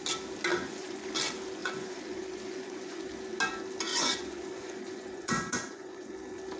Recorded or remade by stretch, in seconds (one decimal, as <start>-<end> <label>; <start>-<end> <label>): 0.0-0.5 recorded; 0.5-1.1 remade; 1.1-1.6 recorded; 1.6-3.1 remade; 3.1-3.9 recorded; 3.9-6.1 remade; 6.1-6.6 recorded